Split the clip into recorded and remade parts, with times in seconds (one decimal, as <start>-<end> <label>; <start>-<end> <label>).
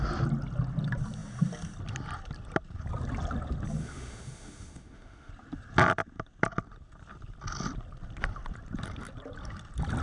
0.0-3.8 recorded; 3.8-5.3 remade; 5.3-10.0 recorded